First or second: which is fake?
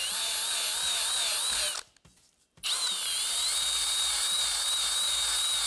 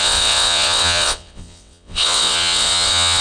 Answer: second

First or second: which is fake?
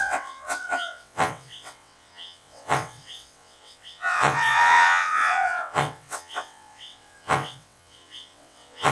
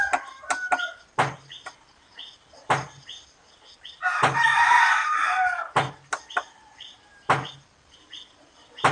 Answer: first